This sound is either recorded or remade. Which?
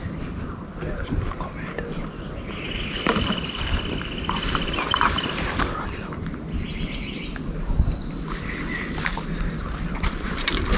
remade